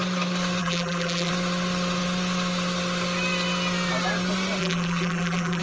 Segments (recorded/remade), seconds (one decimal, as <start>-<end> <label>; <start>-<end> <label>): 0.0-0.6 recorded; 0.6-1.3 remade; 1.3-4.6 recorded; 4.6-5.6 remade